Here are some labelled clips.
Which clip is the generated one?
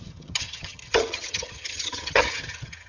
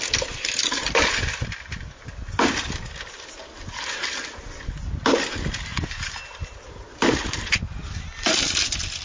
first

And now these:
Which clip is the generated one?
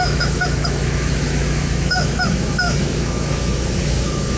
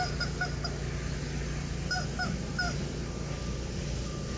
first